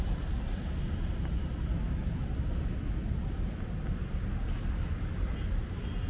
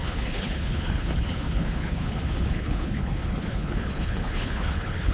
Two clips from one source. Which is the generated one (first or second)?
second